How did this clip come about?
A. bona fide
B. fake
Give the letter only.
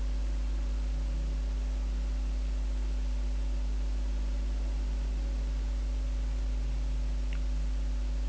A